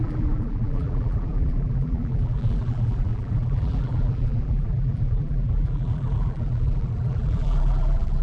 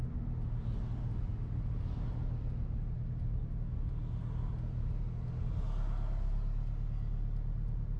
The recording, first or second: second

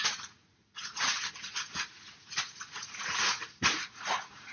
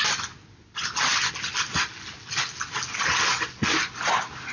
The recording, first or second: second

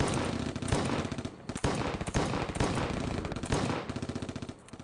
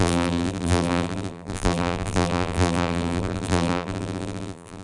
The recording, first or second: first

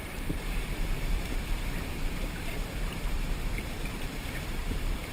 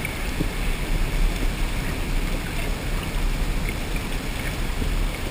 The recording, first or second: second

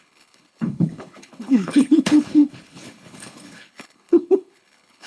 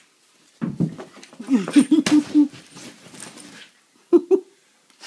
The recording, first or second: second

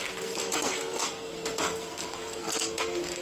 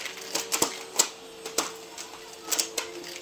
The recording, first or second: second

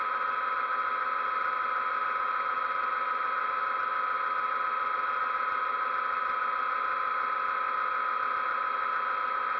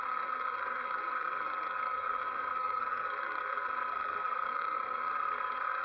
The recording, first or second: first